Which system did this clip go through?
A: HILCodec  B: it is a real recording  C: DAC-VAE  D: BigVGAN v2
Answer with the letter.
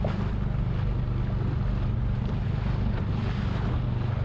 B